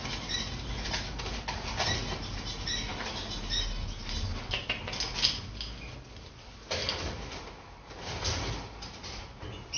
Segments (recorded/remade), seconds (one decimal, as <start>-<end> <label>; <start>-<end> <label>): 0.0-9.8 recorded